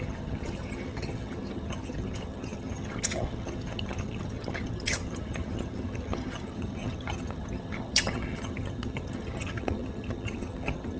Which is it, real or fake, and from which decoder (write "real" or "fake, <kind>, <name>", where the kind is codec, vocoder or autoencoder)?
fake, vocoder, HiFi-GAN